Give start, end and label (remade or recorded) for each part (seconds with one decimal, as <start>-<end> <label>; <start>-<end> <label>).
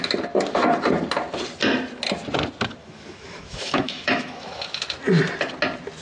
0.0-2.8 recorded; 2.8-4.8 remade; 4.8-6.0 recorded